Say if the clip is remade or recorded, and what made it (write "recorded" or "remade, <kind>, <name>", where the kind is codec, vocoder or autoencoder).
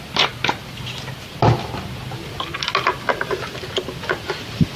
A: recorded